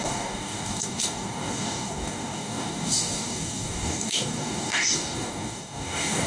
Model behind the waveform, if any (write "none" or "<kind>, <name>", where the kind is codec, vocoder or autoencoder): codec, DAC